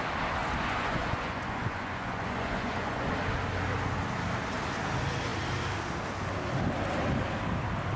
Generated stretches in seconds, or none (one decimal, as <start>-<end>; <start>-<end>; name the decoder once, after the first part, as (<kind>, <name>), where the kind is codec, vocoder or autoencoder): 0.4-3.1 (vocoder, Vocos)